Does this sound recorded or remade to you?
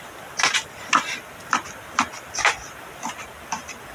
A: recorded